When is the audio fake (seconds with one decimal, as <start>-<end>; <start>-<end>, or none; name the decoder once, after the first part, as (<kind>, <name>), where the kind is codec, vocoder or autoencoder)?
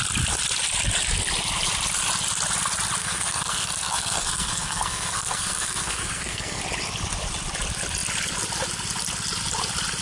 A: 3.0-6.6 (codec, SNAC)